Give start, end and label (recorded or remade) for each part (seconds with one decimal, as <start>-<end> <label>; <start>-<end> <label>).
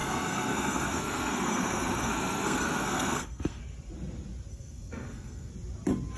0.0-3.6 remade; 3.6-4.5 recorded; 4.5-5.5 remade; 5.5-6.2 recorded